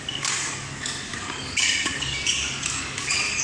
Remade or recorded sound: remade